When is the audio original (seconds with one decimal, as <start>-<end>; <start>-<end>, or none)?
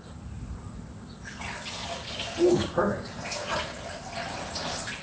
0.0-5.0